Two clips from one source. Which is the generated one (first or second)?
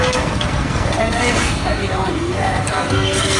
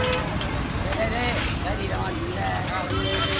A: first